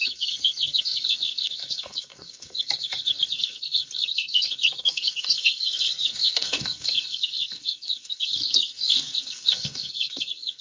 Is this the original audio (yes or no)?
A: no